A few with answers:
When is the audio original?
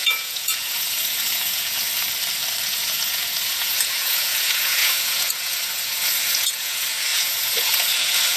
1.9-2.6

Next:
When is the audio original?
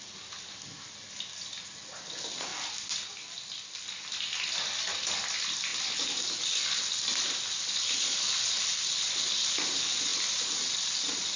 0.0-11.4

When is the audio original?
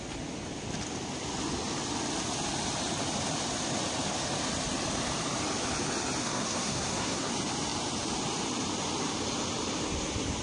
0.0-6.2; 7.3-10.4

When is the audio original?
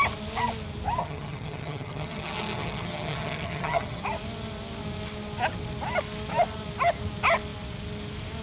0.0-1.0; 4.0-8.4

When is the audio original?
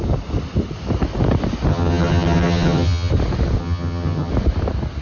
0.0-1.7; 3.1-3.6; 4.3-5.0